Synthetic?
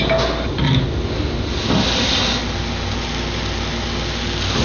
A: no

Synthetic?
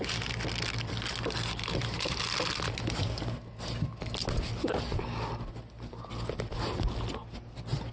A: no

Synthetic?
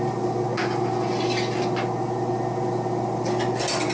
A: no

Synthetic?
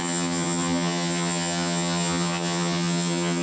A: yes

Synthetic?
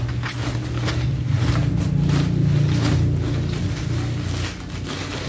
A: no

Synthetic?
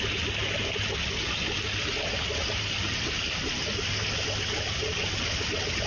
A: no